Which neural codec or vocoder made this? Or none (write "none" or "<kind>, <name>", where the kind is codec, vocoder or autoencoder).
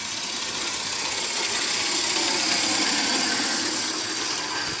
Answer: none